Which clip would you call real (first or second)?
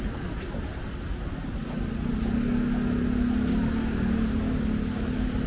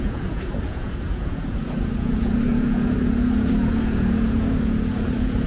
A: first